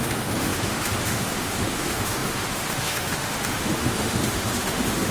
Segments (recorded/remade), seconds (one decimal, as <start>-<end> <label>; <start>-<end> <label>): 0.0-5.1 remade